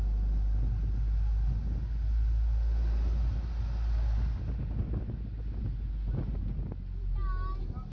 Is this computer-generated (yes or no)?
no